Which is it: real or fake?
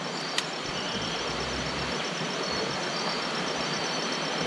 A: real